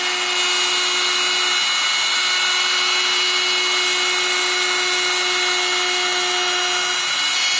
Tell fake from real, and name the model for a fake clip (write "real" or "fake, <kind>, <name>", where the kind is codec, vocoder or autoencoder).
real